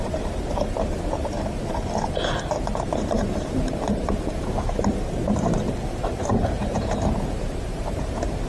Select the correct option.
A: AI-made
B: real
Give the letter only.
A